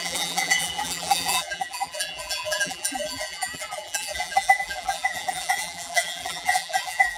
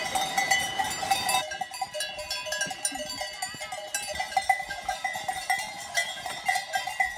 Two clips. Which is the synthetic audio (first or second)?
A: first